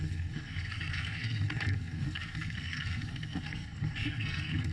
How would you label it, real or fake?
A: fake